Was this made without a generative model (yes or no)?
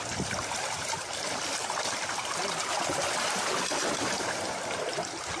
no